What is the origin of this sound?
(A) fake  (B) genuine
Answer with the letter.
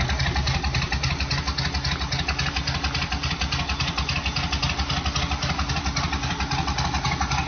B